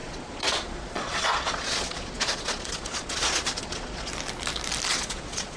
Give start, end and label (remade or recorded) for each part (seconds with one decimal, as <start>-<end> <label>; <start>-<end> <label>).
0.0-4.1 remade; 4.1-4.9 recorded; 4.9-5.6 remade